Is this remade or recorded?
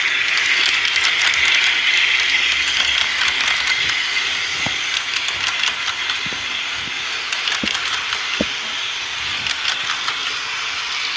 recorded